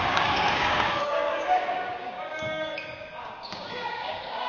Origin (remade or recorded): remade